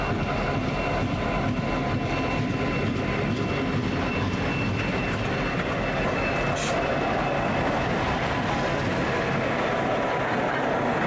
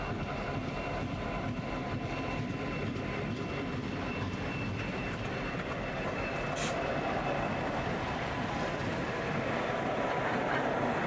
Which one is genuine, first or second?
first